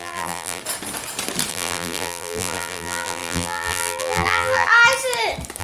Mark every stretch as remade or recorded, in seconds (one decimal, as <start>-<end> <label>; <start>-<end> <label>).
0.0-0.6 remade; 0.6-1.5 recorded; 1.5-4.7 remade; 4.7-5.6 recorded